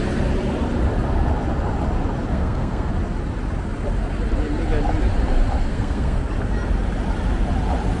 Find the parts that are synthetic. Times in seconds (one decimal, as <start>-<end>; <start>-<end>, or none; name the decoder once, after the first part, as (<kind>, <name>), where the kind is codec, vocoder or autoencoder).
2.3-2.9 (codec, SNAC); 5.7-6.2